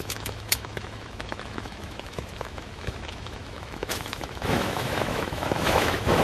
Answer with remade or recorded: remade